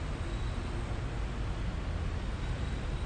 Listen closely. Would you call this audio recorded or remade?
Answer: recorded